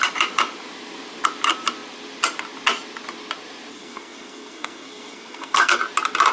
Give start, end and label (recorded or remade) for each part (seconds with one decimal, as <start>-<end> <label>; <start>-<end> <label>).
0.0-3.7 recorded; 3.7-5.8 remade; 5.8-6.3 recorded